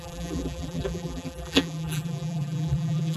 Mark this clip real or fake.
fake